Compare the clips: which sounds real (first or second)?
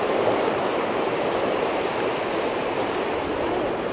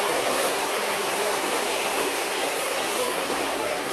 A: first